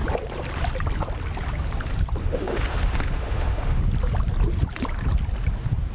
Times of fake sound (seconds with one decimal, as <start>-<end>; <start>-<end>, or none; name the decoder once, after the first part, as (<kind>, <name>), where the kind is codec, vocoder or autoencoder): 2.2-3.8 (autoencoder, DAC-VAE)